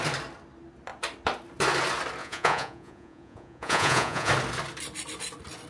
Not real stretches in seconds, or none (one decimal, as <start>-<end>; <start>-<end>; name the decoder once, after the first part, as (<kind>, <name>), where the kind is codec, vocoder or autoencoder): 2.2-4.3 (vocoder, Vocos)